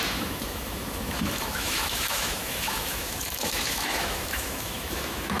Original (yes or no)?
no